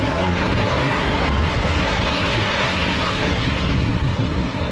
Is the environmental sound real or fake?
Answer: fake